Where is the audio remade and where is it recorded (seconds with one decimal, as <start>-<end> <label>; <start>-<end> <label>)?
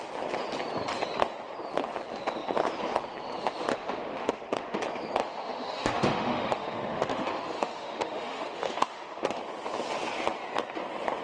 0.0-3.7 recorded; 3.7-4.8 remade; 4.8-5.2 recorded; 5.2-9.4 remade; 9.4-11.2 recorded